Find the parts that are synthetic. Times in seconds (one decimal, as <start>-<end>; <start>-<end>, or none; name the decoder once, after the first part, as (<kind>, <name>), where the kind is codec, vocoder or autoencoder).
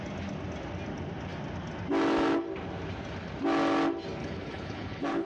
4.2-5.3 (codec, HILCodec)